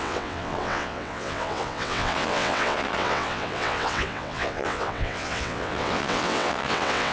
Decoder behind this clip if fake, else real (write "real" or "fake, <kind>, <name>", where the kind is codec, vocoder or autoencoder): fake, vocoder, WaveNeXt